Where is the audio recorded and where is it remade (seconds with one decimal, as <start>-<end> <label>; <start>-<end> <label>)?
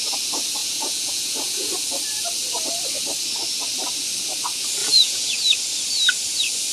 0.0-0.6 recorded; 0.6-1.7 remade; 1.7-4.8 recorded; 4.8-5.3 remade; 5.3-6.7 recorded